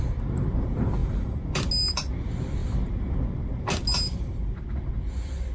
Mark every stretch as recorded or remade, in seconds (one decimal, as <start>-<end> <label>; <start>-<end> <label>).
0.0-5.5 recorded